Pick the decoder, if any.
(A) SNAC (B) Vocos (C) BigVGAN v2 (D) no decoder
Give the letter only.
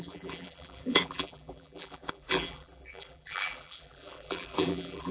C